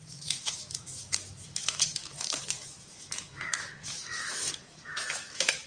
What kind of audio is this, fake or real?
fake